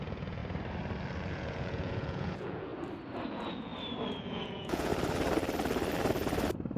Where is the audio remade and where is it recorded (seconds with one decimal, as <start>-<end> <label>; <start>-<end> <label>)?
0.0-0.4 remade; 0.4-1.3 recorded; 1.3-2.7 remade; 2.7-3.3 recorded; 3.3-3.7 remade; 3.7-4.2 recorded; 4.2-4.9 remade; 4.9-6.8 recorded